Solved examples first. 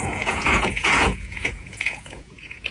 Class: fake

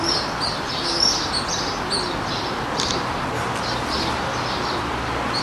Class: real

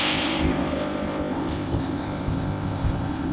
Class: fake